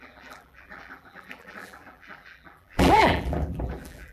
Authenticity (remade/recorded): remade